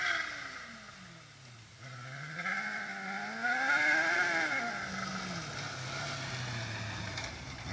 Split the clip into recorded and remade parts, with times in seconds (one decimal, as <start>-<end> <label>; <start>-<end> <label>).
0.0-7.7 recorded

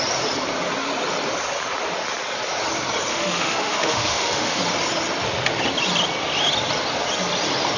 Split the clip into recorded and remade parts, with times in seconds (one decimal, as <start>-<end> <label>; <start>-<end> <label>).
0.0-3.1 recorded; 3.1-4.6 remade; 4.6-7.8 recorded

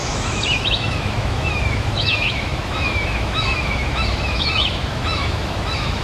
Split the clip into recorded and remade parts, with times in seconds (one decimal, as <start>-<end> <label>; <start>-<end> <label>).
0.0-6.0 remade

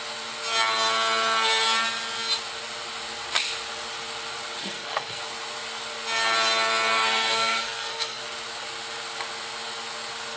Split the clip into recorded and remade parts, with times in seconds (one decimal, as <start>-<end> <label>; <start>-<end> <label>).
0.0-4.6 recorded; 4.6-5.2 remade; 5.2-6.9 recorded; 6.9-8.2 remade; 8.2-10.4 recorded

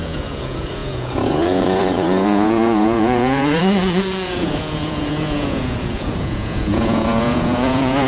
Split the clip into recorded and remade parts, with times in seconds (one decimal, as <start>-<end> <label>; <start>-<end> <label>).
0.0-8.1 remade

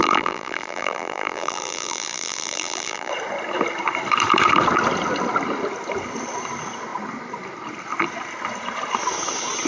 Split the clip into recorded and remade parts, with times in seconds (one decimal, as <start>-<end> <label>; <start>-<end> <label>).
0.0-3.1 remade; 3.1-9.7 recorded

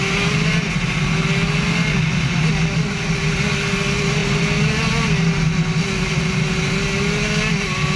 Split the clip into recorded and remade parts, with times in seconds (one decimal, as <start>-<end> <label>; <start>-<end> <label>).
0.0-8.0 recorded

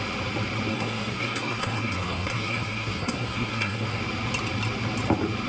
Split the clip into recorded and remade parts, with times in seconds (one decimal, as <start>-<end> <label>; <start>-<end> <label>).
0.0-0.7 recorded; 0.7-4.0 remade; 4.0-5.5 recorded